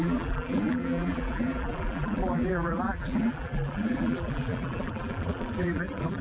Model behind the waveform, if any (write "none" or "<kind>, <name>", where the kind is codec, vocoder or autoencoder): vocoder, BigVGAN v2